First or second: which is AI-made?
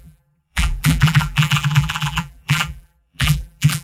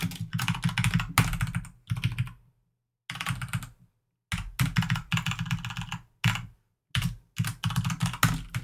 first